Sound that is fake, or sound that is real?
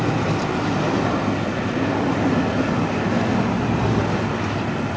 real